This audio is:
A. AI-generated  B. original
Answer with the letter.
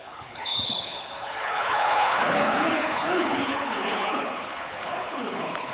A